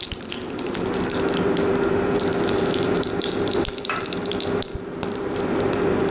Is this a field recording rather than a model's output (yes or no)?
no